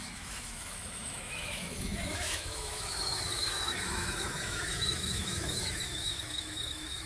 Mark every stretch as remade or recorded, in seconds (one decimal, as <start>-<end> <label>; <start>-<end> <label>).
0.0-7.1 remade